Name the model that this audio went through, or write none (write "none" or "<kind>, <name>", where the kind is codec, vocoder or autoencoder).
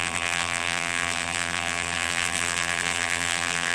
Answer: vocoder, BigVGAN v2